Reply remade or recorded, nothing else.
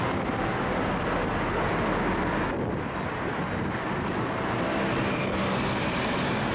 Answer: recorded